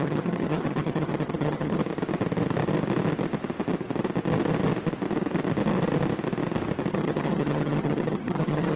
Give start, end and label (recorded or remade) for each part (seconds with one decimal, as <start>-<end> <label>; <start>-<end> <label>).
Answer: 0.0-1.8 remade; 1.8-6.9 recorded; 6.9-8.8 remade